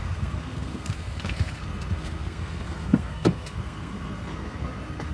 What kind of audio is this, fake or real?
fake